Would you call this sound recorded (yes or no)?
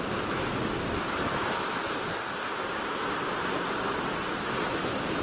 yes